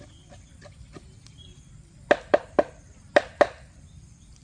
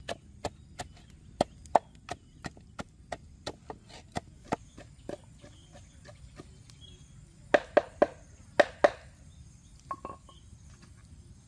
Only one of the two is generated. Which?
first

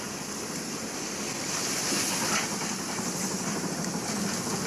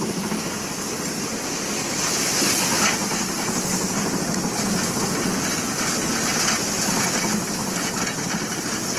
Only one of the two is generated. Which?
first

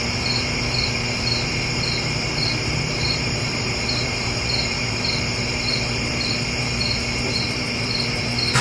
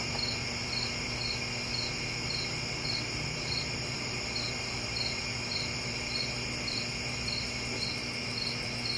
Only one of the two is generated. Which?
first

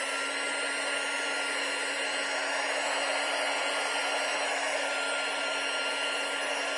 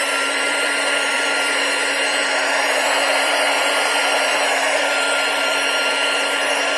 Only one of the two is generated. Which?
second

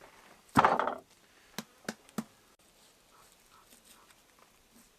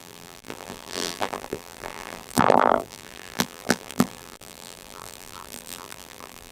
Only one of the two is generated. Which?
second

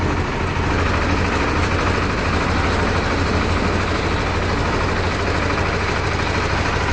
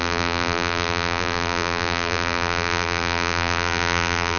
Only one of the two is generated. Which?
second